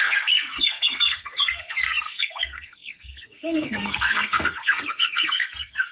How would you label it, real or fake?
fake